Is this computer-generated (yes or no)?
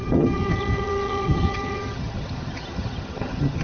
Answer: yes